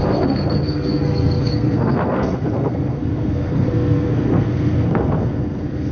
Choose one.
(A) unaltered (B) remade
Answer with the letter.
B